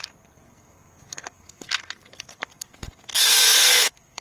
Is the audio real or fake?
fake